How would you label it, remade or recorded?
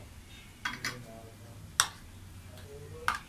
recorded